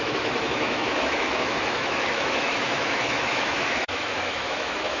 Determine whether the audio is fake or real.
fake